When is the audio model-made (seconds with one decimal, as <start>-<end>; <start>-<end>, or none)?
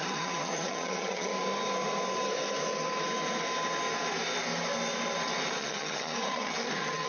0.0-1.3; 5.6-7.1